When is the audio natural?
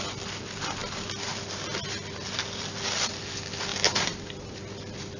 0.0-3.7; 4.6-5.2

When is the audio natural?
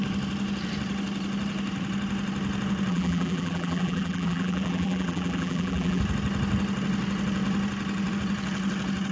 0.0-2.9; 6.0-9.1